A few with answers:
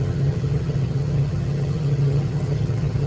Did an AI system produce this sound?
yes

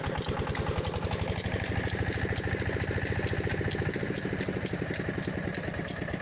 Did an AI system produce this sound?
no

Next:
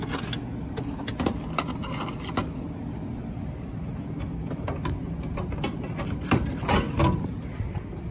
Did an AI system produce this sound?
no